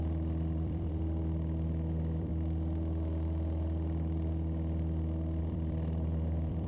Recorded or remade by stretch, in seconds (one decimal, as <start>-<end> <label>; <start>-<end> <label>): 0.0-2.3 remade; 2.3-5.4 recorded; 5.4-6.7 remade